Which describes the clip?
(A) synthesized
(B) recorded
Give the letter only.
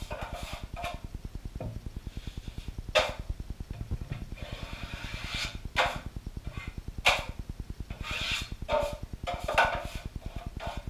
B